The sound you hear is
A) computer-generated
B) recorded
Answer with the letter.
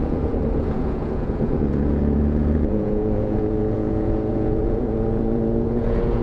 A